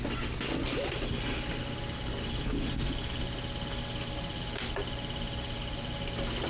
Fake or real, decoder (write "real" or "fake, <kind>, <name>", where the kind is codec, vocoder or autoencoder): real